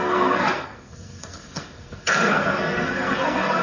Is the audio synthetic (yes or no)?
yes